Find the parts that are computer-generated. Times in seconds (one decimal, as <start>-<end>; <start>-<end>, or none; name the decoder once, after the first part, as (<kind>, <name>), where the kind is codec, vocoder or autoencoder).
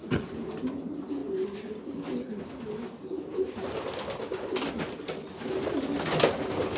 none